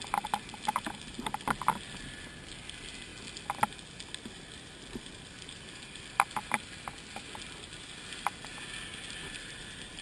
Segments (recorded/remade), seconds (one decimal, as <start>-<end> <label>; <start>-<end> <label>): 0.0-10.0 recorded